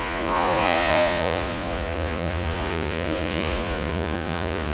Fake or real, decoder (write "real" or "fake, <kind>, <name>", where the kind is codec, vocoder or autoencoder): fake, vocoder, Vocos